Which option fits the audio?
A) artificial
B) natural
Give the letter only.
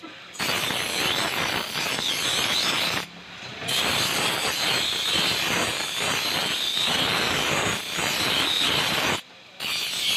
B